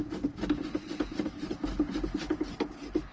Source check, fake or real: real